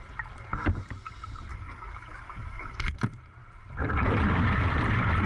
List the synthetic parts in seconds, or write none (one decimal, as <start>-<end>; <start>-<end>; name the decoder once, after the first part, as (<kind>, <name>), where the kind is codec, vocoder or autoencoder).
1.5-2.8 (codec, DAC)